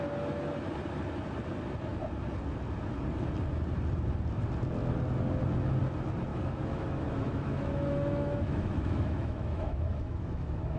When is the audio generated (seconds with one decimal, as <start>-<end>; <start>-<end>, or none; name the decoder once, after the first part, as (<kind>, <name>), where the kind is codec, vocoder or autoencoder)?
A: 6.3-10.8 (autoencoder, DAC-VAE)